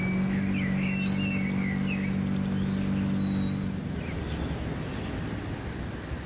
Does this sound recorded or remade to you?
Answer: recorded